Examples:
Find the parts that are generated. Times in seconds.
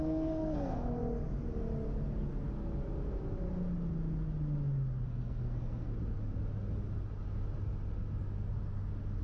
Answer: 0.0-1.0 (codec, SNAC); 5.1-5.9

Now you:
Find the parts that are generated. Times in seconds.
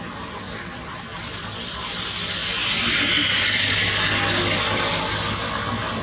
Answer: none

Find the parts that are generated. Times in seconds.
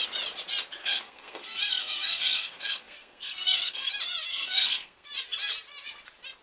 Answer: 0.8-3.9 (codec, SNAC); 4.3-5.1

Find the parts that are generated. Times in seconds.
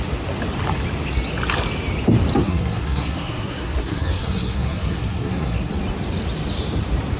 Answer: 2.4-5.7 (codec, SNAC)